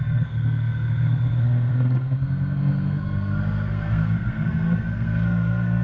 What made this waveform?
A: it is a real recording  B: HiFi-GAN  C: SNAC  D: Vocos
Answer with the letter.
C